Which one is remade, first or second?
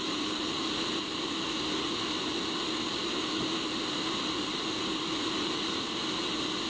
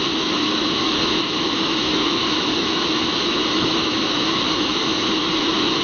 second